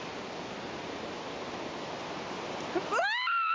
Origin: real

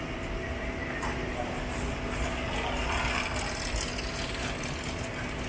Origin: real